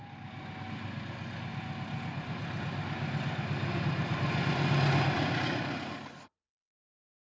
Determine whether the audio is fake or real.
real